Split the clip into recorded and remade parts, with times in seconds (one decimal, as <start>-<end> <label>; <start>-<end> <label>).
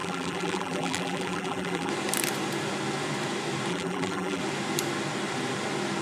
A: 0.0-1.9 remade; 1.9-3.7 recorded; 3.7-4.4 remade; 4.4-6.0 recorded